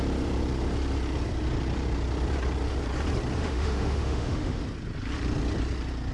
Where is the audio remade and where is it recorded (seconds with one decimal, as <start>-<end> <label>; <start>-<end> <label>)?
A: 0.0-3.4 recorded; 3.4-4.6 remade; 4.6-6.1 recorded

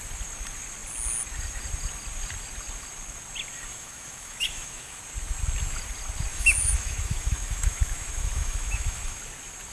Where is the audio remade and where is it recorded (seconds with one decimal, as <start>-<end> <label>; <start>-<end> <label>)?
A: 0.0-3.7 recorded; 3.7-5.0 remade; 5.0-6.3 recorded; 6.3-9.2 remade; 9.2-9.7 recorded

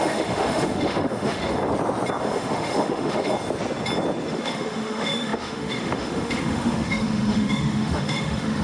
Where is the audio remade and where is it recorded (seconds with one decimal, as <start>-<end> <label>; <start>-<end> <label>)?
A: 0.0-1.6 remade; 1.6-2.2 recorded; 2.2-3.3 remade; 3.3-4.3 recorded; 4.3-8.6 remade

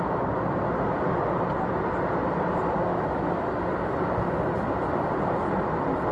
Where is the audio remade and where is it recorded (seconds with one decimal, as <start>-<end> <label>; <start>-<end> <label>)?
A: 0.0-2.9 recorded; 2.9-3.6 remade; 3.6-6.1 recorded

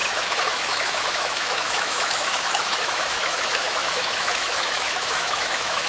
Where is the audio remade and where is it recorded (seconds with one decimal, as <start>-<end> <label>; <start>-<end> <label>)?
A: 0.0-5.9 remade

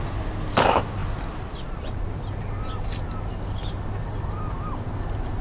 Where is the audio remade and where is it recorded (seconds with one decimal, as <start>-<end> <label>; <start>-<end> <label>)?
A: 0.0-5.4 recorded

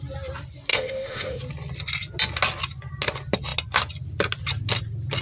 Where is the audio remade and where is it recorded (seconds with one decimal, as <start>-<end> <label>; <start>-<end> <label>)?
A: 0.0-0.7 recorded; 0.7-1.4 remade; 1.4-5.2 recorded